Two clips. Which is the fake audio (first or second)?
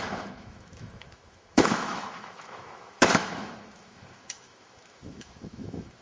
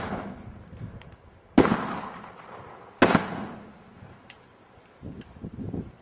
first